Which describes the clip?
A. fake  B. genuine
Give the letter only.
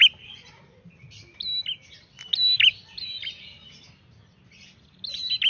B